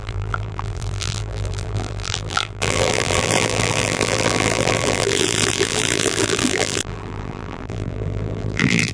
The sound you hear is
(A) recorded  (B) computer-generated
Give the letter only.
B